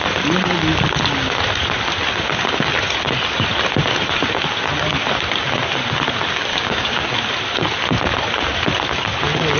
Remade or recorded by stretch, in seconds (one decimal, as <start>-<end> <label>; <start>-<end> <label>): 0.0-6.5 recorded; 6.5-7.1 remade; 7.1-9.6 recorded